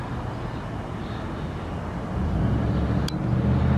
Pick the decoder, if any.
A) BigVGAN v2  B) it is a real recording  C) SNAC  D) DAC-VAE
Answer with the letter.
B